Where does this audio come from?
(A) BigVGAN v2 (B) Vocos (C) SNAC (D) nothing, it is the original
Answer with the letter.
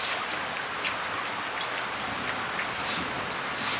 D